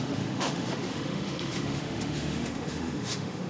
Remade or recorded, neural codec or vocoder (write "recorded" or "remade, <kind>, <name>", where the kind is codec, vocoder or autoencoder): remade, autoencoder, DAC-VAE